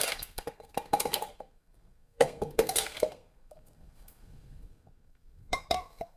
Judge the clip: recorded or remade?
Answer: remade